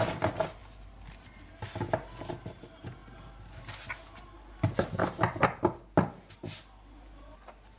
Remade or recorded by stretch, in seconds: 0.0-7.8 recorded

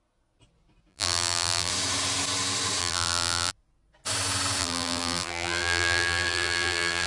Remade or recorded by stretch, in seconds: 0.0-0.9 recorded; 0.9-1.7 remade; 1.7-2.8 recorded; 2.8-3.5 remade; 3.5-4.6 recorded; 4.6-7.1 remade

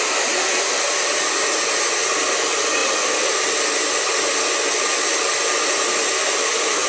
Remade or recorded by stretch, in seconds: 0.0-6.9 recorded

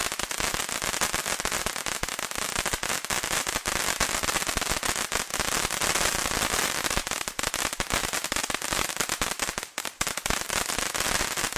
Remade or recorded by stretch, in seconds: 0.0-1.6 remade; 1.6-5.3 recorded; 5.3-7.5 remade; 7.5-8.0 recorded; 8.0-9.3 remade; 9.3-11.6 recorded

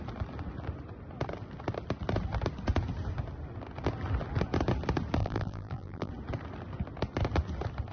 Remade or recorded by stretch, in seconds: 0.0-5.2 recorded; 5.2-6.1 remade; 6.1-7.9 recorded

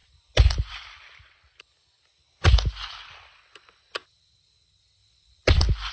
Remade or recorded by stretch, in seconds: 0.0-1.7 remade; 1.7-5.0 recorded; 5.0-5.9 remade

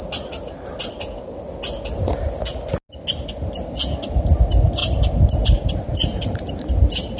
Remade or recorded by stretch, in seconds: 0.0-4.8 recorded; 4.8-6.7 remade; 6.7-7.2 recorded

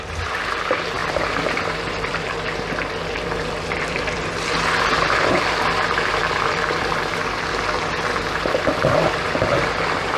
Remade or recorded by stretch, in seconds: 0.0-10.2 remade